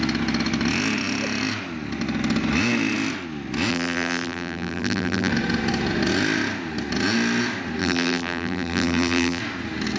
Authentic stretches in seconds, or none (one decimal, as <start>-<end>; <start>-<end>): 0.0-3.7; 5.3-7.8; 9.4-10.0